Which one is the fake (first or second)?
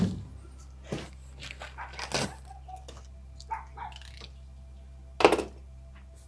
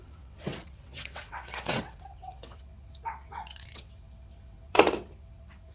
second